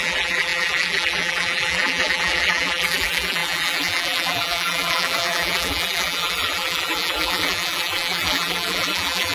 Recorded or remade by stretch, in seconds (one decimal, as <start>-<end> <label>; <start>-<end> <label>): 0.0-9.3 remade